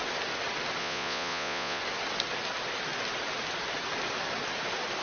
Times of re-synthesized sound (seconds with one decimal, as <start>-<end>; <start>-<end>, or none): 0.8-1.8